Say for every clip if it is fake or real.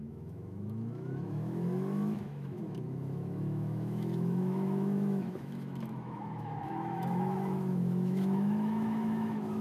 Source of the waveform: fake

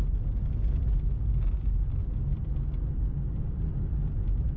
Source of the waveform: real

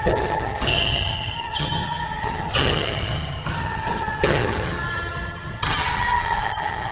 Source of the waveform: fake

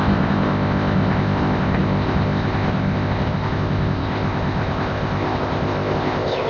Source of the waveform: fake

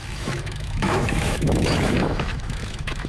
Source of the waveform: fake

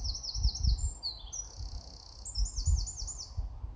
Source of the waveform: real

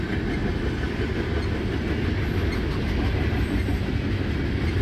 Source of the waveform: real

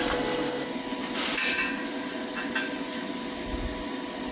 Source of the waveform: real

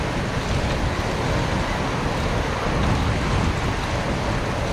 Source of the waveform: real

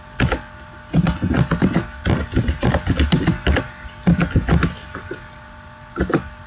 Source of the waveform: real